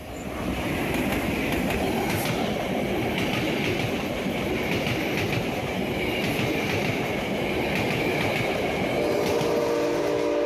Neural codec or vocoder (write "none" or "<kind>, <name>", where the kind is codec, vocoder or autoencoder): none